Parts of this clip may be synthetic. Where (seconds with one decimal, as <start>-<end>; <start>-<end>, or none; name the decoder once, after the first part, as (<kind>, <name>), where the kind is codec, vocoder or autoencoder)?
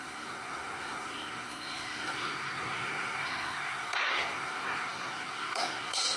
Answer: 0.0-6.2 (codec, SNAC)